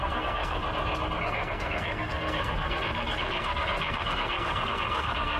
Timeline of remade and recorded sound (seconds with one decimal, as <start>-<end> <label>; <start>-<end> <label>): 0.0-0.6 remade; 0.6-1.2 recorded; 1.2-5.4 remade